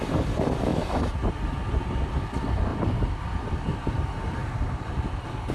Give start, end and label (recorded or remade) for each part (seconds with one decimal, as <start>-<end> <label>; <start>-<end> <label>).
0.0-2.7 recorded; 2.7-3.5 remade; 3.5-5.5 recorded